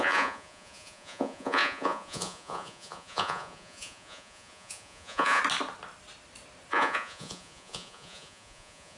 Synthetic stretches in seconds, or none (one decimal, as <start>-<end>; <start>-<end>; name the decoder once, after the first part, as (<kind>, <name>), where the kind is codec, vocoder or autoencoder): 0.0-5.4 (vocoder, Vocos); 6.7-9.0